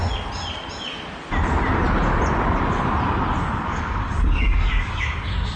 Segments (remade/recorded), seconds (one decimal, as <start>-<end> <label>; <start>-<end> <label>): 0.0-3.4 recorded; 3.4-5.6 remade